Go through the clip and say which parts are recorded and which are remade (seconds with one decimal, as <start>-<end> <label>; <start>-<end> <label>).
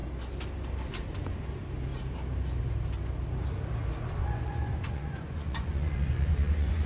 0.0-4.2 recorded; 4.2-6.9 remade